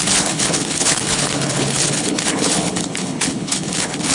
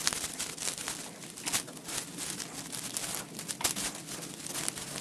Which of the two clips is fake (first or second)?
first